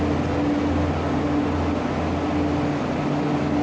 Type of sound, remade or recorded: recorded